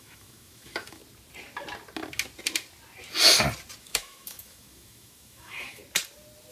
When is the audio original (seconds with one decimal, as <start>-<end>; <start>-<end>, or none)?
1.0-3.8; 5.8-6.5